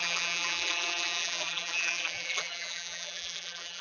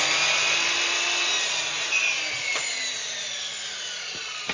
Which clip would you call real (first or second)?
second